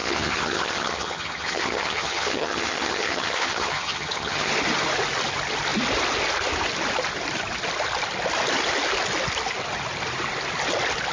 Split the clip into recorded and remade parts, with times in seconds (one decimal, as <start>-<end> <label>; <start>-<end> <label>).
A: 0.0-4.5 remade; 4.5-11.1 recorded